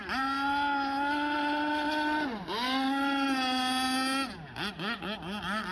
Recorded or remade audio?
recorded